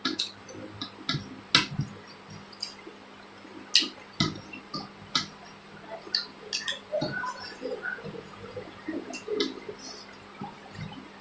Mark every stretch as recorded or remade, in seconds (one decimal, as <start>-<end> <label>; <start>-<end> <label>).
0.0-6.9 recorded; 6.9-9.4 remade; 9.4-11.2 recorded